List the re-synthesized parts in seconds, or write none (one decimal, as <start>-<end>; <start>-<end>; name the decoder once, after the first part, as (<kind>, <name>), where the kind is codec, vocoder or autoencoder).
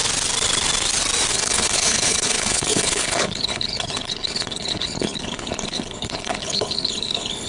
1.3-7.5 (codec, HILCodec)